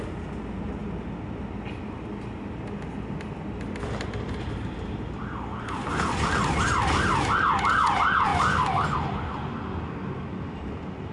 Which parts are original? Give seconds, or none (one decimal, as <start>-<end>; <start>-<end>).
0.0-11.1